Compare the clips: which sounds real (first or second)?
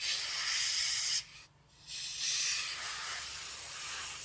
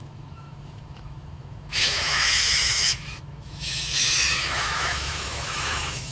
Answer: first